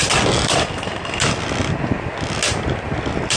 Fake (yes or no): no